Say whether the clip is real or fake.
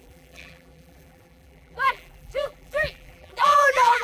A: fake